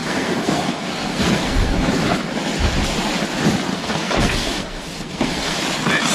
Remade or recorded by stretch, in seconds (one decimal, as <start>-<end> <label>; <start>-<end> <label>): 0.0-1.9 remade; 1.9-3.7 recorded; 3.7-5.6 remade; 5.6-6.1 recorded